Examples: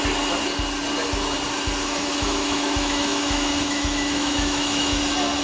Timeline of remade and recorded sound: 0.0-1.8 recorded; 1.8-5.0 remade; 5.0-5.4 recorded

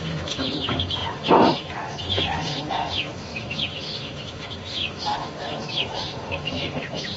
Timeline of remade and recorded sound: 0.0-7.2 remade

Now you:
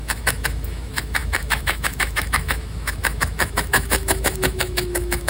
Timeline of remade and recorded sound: 0.0-5.3 remade

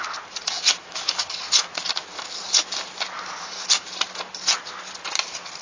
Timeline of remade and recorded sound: 0.0-0.8 recorded; 0.8-1.3 remade; 1.3-5.6 recorded